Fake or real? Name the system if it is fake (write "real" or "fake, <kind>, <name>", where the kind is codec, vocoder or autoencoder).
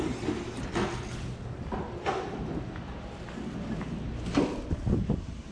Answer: real